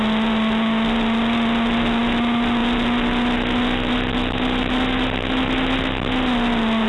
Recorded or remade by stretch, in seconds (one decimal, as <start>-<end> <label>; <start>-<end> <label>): 0.0-6.9 recorded